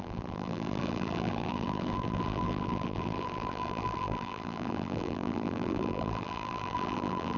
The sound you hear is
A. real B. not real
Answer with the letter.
B